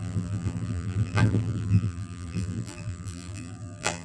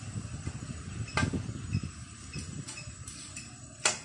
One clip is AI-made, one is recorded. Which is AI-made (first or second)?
first